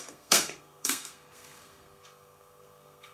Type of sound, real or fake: fake